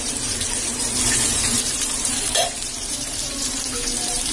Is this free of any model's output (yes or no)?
no